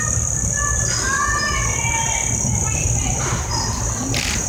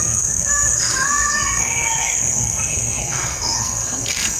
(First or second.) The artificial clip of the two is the second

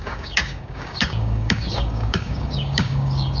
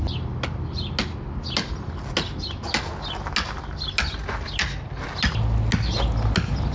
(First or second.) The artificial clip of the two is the first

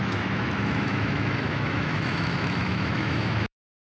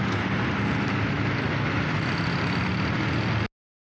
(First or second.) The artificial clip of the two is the first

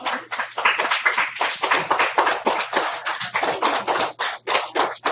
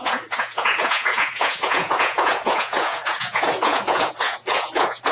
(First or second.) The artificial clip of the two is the second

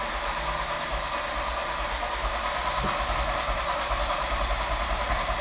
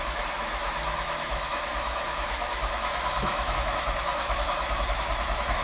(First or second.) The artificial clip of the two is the second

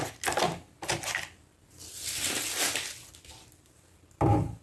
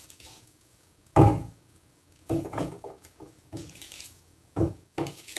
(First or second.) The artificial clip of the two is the second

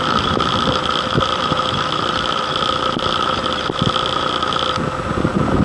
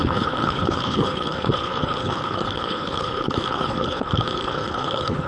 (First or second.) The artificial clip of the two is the second